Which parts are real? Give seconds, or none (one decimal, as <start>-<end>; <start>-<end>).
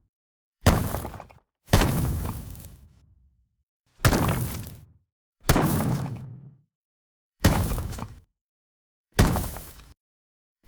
0.8-1.6; 3.9-5.3